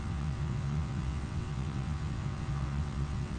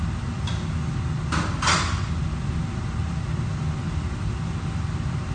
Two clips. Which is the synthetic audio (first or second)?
first